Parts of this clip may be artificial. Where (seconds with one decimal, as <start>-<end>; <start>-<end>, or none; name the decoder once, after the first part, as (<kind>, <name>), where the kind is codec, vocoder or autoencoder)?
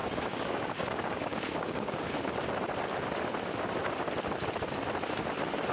0.0-2.4 (codec, DAC)